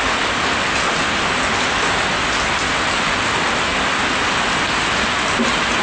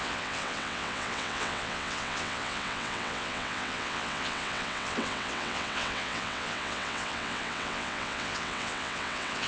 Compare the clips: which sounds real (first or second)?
first